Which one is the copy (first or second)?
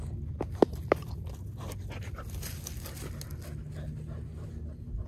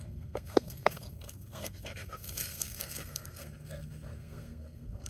second